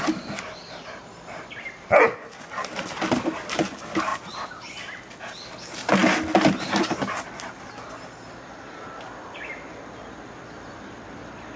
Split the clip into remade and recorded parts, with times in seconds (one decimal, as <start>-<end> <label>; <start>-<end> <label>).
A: 0.0-11.6 recorded